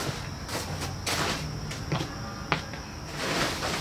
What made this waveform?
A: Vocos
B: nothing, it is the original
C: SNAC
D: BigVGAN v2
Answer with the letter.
B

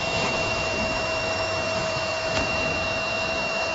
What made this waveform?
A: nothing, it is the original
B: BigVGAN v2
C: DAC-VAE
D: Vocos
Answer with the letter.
C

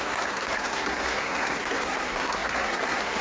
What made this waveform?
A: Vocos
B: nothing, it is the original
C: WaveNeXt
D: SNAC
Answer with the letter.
D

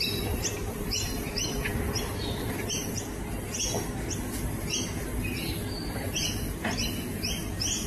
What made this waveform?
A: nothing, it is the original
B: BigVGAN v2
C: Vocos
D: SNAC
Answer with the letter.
B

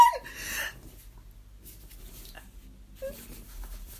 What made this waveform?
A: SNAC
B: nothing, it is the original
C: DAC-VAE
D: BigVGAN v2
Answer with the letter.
B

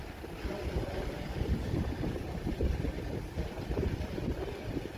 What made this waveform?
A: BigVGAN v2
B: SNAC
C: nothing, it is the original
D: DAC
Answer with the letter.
A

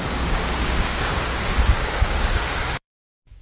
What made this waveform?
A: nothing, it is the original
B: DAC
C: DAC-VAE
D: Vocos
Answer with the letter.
B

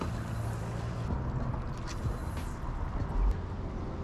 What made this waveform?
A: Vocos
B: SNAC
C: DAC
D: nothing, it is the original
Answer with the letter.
D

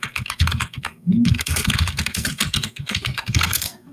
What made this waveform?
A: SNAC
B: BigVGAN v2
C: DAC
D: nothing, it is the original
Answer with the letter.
A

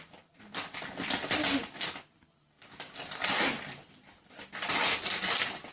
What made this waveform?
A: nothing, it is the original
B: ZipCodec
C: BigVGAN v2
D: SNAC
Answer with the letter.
A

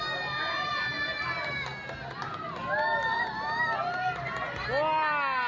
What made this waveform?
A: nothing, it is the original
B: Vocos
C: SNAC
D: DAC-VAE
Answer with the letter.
A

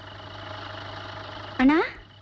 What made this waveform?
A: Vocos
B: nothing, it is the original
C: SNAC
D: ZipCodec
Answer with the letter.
B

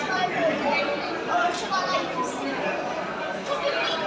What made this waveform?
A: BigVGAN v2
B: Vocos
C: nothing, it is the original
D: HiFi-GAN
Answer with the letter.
C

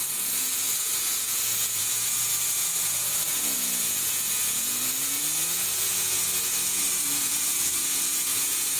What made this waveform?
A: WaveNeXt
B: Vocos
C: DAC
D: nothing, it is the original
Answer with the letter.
B